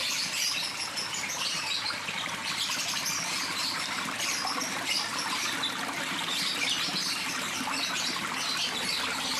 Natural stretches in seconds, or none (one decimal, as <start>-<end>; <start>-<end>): 6.5-9.4